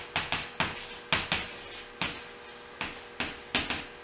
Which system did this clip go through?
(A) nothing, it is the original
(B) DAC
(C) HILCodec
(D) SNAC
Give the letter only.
A